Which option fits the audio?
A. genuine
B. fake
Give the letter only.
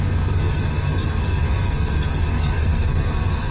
B